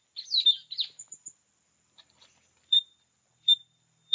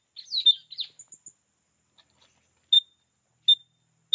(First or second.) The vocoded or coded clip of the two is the first